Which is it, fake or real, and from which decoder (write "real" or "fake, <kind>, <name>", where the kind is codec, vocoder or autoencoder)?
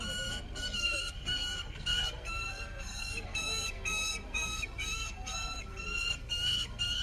fake, codec, SNAC